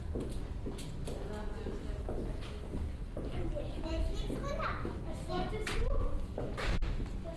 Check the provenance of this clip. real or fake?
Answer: real